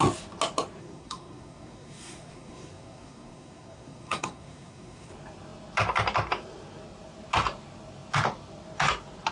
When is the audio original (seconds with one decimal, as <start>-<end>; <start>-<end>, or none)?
0.0-0.8; 5.1-9.3